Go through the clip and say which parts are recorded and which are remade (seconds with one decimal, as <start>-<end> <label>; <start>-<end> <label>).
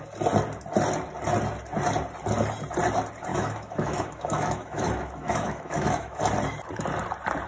0.0-3.3 recorded; 3.3-6.2 remade; 6.2-7.5 recorded